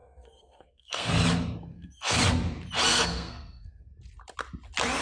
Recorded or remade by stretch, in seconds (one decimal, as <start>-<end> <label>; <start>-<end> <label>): 0.0-1.1 remade; 1.1-1.7 recorded; 1.7-2.2 remade; 2.2-2.9 recorded; 2.9-3.9 remade; 3.9-5.0 recorded